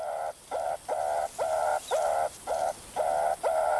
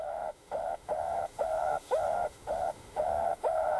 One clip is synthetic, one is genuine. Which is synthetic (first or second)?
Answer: second